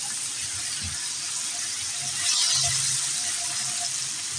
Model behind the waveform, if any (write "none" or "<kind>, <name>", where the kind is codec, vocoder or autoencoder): none